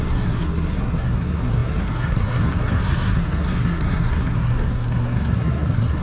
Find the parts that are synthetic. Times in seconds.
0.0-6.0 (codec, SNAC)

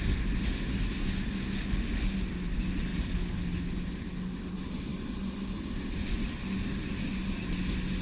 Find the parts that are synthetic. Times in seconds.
none

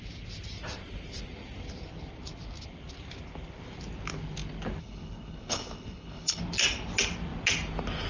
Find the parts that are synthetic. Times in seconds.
4.8-6.4 (codec, HILCodec)

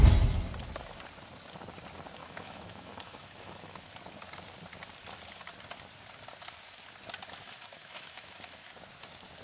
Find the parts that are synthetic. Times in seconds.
2.2-3.8 (autoencoder, DAC-VAE); 7.6-8.6

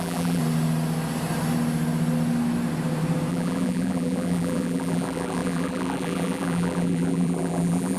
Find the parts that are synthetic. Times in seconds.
0.0-0.4 (vocoder, BigVGAN v2); 3.3-8.0

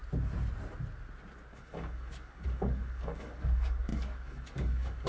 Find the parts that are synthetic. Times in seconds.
1.5-5.1 (codec, DAC)

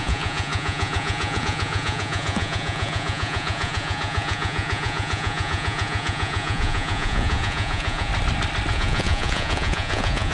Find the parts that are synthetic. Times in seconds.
0.0-8.1 (vocoder, Vocos); 8.7-10.3